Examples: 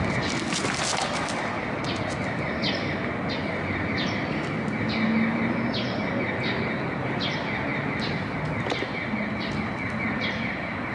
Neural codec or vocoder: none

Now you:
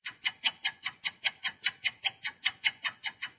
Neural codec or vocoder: vocoder, Vocos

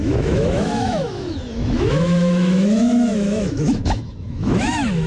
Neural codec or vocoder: autoencoder, DAC-VAE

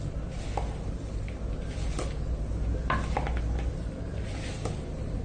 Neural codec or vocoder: none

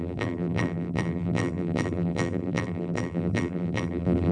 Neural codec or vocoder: vocoder, BigVGAN v2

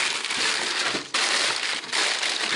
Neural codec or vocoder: none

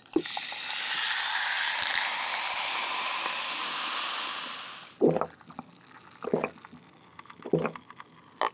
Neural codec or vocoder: none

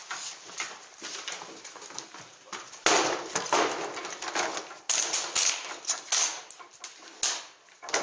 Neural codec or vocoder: none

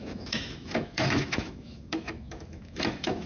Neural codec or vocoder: autoencoder, DAC-VAE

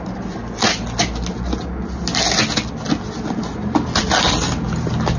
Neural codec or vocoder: none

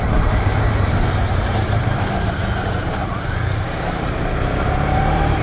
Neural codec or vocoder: vocoder, BigVGAN v2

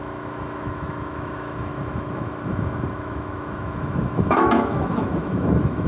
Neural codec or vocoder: autoencoder, DAC-VAE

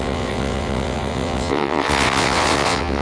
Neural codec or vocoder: vocoder, WaveNeXt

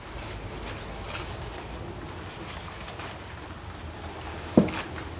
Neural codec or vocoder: none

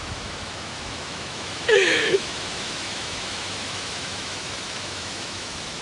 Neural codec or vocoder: autoencoder, DAC-VAE